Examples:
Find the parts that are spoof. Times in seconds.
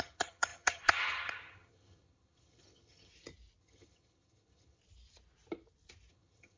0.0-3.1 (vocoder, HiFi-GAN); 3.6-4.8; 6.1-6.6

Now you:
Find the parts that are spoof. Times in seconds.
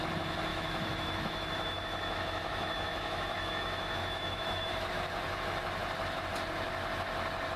0.5-4.9 (autoencoder, DAC-VAE)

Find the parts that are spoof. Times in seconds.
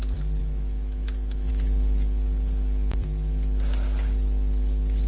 0.4-1.5 (autoencoder, DAC-VAE)